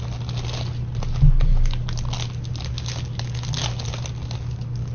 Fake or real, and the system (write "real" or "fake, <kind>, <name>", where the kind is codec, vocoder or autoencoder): real